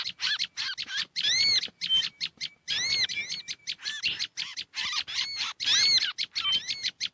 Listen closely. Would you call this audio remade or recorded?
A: recorded